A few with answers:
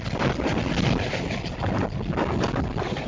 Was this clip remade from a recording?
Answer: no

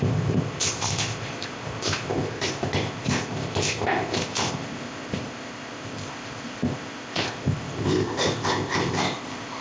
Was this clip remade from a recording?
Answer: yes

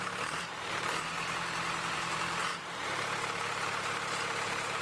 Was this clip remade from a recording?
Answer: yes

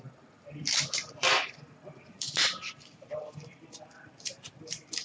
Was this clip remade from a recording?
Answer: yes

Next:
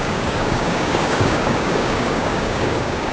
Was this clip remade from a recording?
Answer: yes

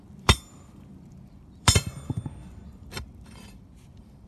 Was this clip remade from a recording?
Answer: yes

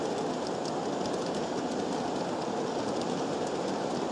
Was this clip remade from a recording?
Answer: no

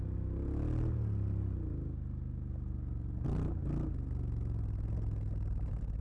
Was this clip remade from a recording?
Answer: no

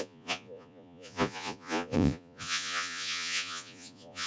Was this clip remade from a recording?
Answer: yes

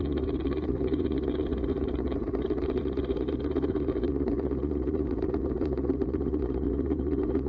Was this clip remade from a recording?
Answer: yes